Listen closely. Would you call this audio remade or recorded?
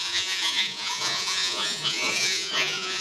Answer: remade